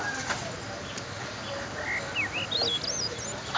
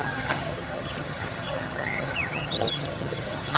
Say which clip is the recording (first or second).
first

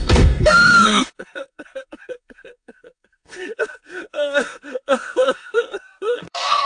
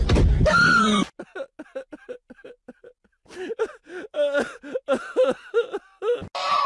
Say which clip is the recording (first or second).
second